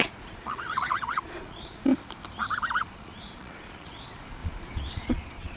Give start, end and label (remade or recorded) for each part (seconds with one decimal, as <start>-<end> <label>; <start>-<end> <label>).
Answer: 0.0-1.9 remade; 1.9-2.8 recorded; 2.8-5.6 remade